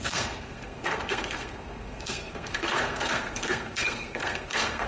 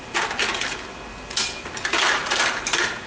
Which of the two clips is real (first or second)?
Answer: second